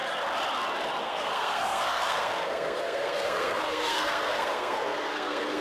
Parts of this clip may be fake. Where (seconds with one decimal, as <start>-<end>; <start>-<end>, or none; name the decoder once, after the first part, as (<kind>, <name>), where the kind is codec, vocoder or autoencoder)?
1.0-5.6 (codec, SNAC)